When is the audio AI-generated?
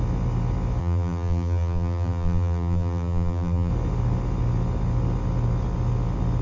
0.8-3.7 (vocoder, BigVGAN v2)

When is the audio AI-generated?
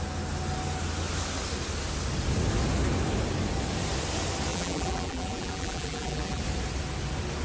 4.5-6.4 (vocoder, BigVGAN v2)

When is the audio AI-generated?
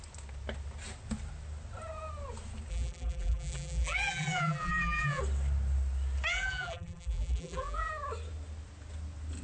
2.7-5.2 (vocoder, BigVGAN v2); 6.3-7.9